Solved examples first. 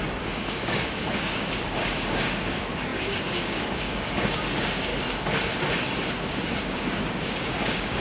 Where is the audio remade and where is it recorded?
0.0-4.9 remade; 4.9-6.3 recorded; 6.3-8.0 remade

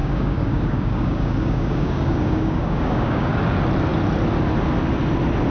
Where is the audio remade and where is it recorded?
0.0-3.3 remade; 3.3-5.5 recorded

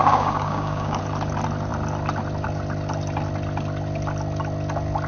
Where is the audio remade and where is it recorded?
0.0-1.0 remade; 1.0-5.1 recorded

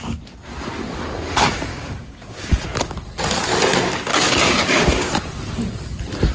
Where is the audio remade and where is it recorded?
0.0-1.7 recorded; 1.7-2.5 remade; 2.5-4.1 recorded; 4.1-5.1 remade; 5.1-6.3 recorded